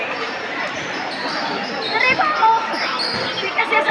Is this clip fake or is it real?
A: fake